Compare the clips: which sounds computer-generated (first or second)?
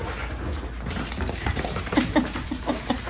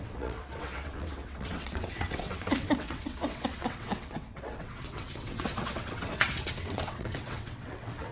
second